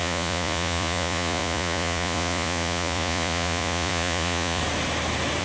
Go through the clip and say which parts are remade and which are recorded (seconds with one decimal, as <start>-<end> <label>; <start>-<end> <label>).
0.0-4.6 remade; 4.6-5.4 recorded